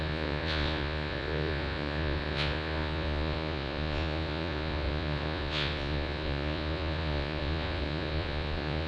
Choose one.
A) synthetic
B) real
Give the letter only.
A